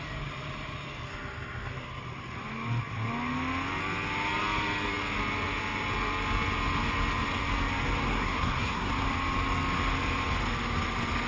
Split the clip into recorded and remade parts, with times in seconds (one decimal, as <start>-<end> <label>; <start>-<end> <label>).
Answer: 0.0-8.1 recorded; 8.1-8.9 remade; 8.9-11.3 recorded